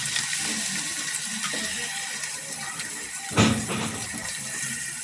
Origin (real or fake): real